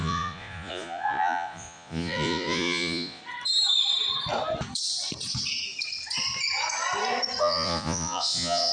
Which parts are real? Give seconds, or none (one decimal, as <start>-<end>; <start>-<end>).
3.2-7.4